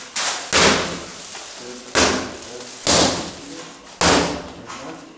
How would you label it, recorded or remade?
recorded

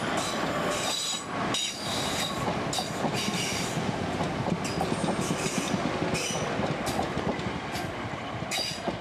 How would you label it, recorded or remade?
recorded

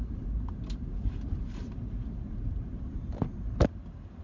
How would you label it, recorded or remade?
remade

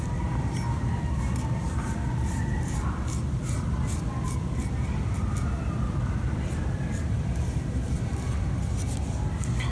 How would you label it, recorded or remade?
recorded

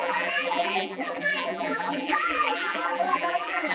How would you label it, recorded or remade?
remade